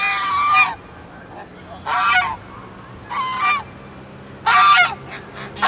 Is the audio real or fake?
real